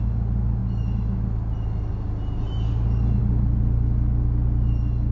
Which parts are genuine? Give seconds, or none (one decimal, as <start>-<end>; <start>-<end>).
0.0-5.1